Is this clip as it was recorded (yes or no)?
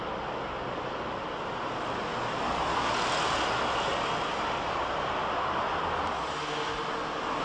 yes